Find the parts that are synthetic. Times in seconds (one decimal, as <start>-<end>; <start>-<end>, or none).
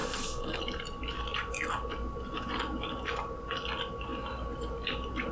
0.0-0.6